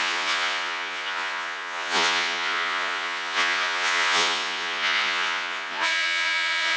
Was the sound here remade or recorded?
remade